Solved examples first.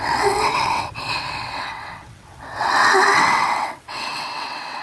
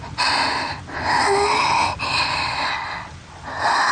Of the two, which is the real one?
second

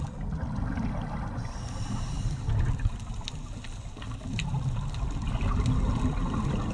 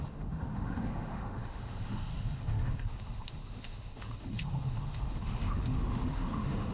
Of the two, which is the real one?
first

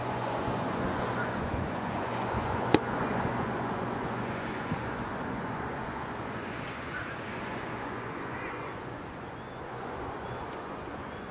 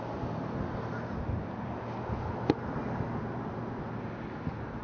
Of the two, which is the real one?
second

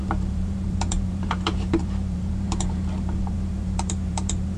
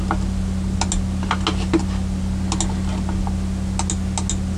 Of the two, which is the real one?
second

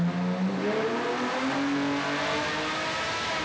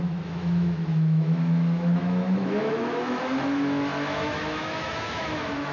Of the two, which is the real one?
first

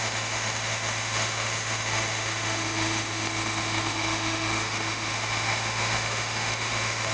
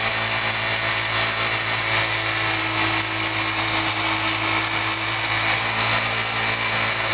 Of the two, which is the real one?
second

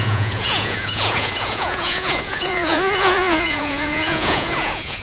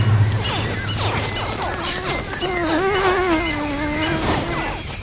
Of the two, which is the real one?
second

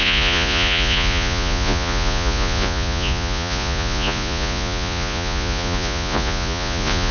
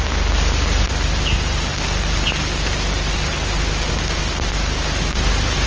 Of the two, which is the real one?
second